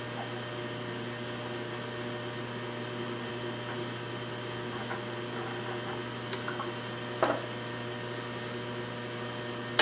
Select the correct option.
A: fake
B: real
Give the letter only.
B